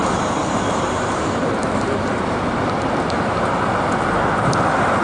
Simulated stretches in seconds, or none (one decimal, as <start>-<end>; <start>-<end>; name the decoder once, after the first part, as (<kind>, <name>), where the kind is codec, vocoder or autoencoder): 0.4-3.4 (vocoder, BigVGAN v2)